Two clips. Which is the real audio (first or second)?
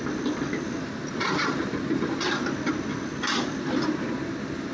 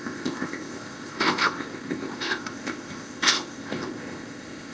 first